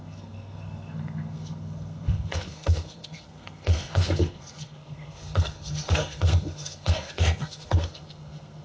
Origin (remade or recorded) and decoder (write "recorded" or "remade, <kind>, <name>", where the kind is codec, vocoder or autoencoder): remade, codec, SNAC